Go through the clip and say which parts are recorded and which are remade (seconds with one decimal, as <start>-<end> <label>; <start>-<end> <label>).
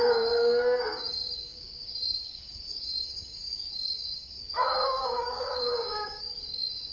0.0-6.9 remade